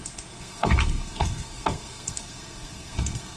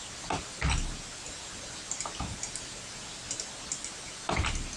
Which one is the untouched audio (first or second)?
second